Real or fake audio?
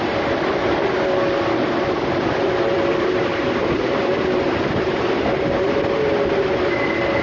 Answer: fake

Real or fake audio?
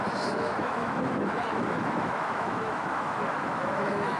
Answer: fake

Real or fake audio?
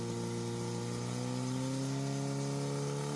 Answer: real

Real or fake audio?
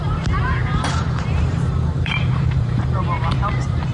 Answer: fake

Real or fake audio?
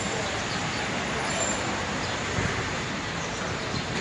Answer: fake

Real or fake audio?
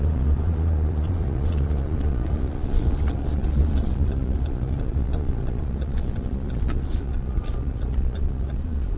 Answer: fake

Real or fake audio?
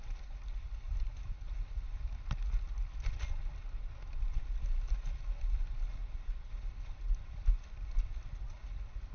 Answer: real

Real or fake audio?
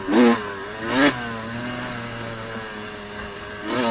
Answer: real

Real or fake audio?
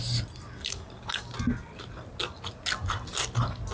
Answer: real